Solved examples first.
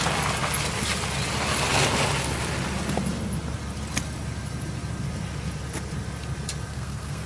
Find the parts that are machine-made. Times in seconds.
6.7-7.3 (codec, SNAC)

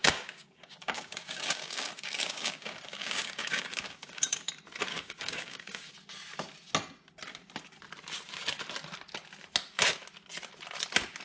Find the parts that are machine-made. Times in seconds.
0.0-4.5 (codec, DAC); 4.9-5.9

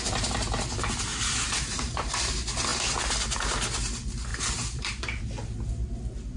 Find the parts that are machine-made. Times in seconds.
1.1-2.2 (vocoder, BigVGAN v2); 4.3-5.2

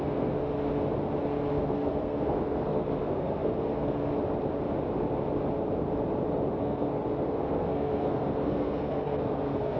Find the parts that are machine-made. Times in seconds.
0.0-0.4 (codec, SNAC); 1.5-4.1; 6.6-9.8

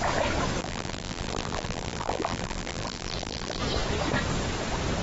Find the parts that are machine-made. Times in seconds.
0.6-3.6 (vocoder, BigVGAN v2)

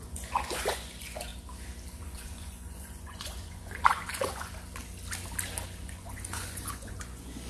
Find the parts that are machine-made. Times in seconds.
0.0-1.3 (vocoder, Vocos); 2.0-4.5; 5.8-7.5